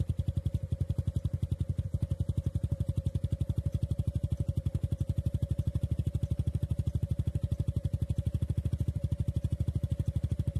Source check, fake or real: real